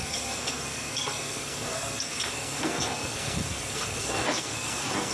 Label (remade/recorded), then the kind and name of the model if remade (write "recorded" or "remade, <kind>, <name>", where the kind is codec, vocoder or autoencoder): remade, codec, SNAC